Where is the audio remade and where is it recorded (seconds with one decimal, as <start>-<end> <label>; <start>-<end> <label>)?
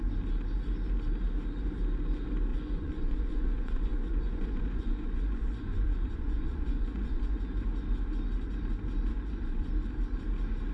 0.0-2.5 recorded; 2.5-7.4 remade; 7.4-9.1 recorded; 9.1-9.7 remade; 9.7-10.7 recorded